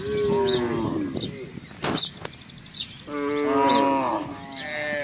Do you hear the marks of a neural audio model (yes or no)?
no